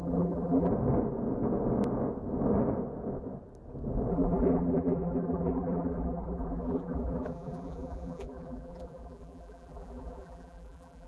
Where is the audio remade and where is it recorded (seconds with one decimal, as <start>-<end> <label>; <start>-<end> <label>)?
0.0-0.7 remade; 0.7-4.1 recorded; 4.1-11.1 remade